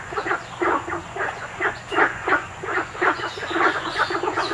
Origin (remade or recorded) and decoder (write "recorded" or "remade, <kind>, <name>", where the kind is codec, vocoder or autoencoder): remade, vocoder, Vocos